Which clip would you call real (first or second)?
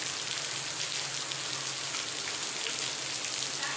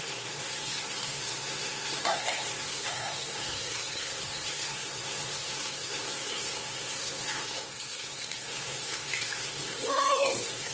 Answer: first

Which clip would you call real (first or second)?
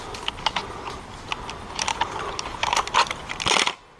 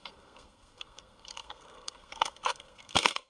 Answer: first